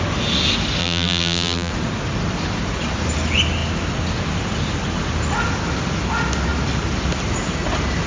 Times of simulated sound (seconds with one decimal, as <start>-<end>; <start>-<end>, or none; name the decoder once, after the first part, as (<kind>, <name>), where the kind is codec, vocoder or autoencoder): 0.8-1.7 (vocoder, BigVGAN v2)